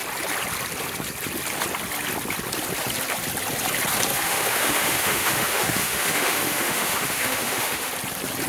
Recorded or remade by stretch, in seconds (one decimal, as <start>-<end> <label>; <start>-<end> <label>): 0.0-4.1 recorded; 4.1-7.9 remade; 7.9-8.5 recorded